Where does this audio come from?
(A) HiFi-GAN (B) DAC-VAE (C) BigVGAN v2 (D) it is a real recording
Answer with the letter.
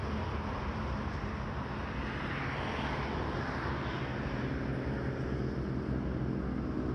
D